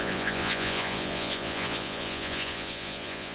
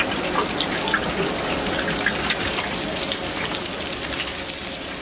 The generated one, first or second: first